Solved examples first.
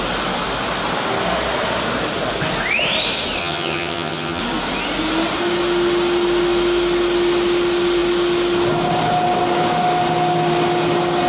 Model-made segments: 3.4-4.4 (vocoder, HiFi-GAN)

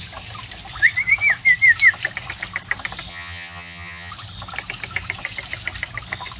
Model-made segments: 3.1-4.1 (vocoder, HiFi-GAN)

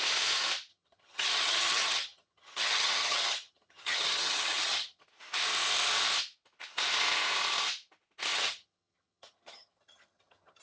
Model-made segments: 0.7-5.0 (vocoder, HiFi-GAN); 8.3-10.6